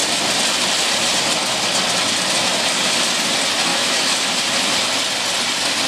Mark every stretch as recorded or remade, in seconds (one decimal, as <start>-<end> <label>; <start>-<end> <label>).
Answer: 0.0-3.7 recorded; 3.7-4.2 remade; 4.2-5.9 recorded